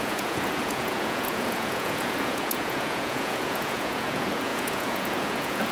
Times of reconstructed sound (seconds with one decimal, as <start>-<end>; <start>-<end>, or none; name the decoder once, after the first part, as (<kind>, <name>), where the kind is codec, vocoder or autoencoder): 0.0-5.7 (vocoder, Vocos)